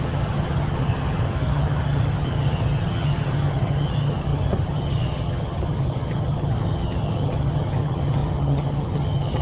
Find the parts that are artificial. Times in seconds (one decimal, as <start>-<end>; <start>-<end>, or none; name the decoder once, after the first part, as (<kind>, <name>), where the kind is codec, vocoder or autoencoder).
0.0-9.4 (vocoder, HiFi-GAN)